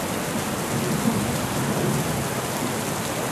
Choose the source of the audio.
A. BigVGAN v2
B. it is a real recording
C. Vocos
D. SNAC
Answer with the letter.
B